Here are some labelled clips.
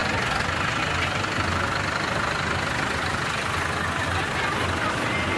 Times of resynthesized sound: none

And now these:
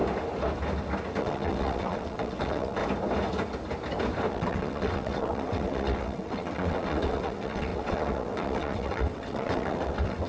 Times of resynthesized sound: 1.2-2.8; 4.3-10.3

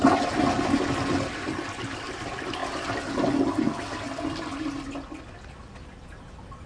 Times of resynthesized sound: none

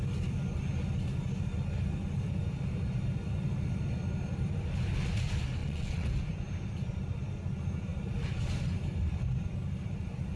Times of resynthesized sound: 5.6-6.1

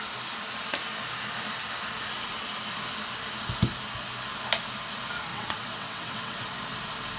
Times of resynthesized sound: 5.3-6.4

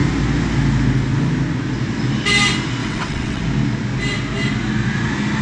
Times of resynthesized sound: 2.8-3.4

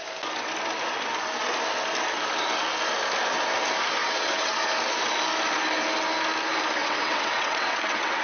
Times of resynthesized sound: 4.0-4.6; 6.8-8.2

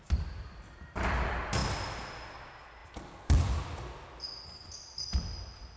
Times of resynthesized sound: none